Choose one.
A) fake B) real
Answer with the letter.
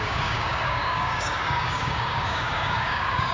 A